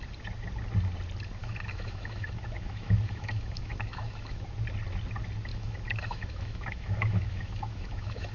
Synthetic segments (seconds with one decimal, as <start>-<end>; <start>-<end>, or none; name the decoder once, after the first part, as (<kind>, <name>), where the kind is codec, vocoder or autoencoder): 1.4-4.5 (autoencoder, DAC-VAE); 5.5-8.3